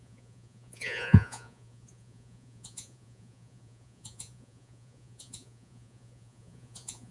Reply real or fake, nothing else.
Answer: fake